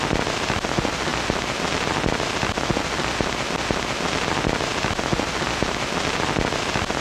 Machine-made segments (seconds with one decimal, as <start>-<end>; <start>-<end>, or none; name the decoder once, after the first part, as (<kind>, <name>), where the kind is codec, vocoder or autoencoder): none